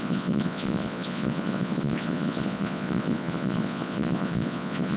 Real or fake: fake